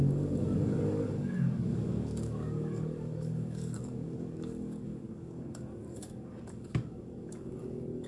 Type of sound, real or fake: fake